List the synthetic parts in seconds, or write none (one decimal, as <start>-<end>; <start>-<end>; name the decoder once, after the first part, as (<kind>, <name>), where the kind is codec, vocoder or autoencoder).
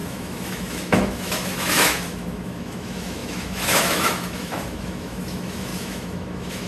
0.0-6.7 (autoencoder, DAC-VAE)